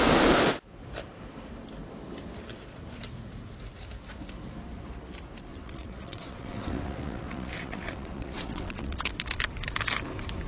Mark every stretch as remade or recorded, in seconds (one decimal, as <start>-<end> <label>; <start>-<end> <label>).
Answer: 0.0-5.5 recorded; 5.5-9.1 remade; 9.1-10.5 recorded